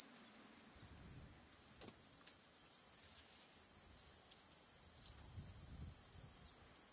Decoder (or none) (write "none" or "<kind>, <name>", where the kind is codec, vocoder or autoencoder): none